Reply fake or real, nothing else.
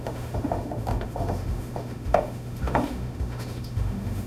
fake